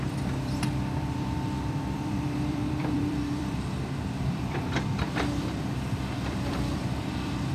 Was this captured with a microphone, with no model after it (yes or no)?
no